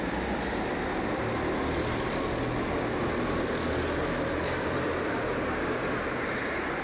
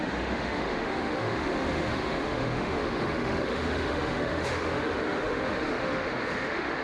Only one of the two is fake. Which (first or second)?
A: second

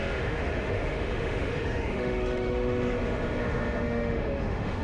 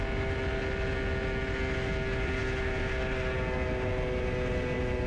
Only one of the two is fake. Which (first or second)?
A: first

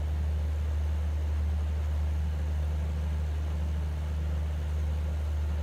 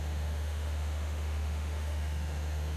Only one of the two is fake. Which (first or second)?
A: second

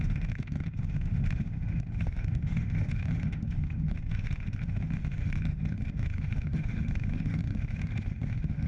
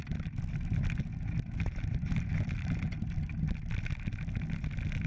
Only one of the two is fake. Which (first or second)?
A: first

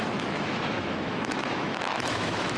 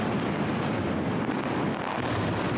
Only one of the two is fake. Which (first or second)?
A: first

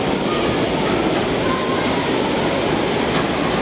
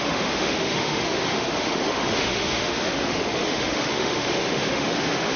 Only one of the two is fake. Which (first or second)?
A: second